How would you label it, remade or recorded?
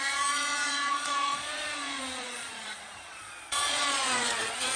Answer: remade